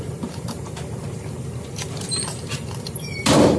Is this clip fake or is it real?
fake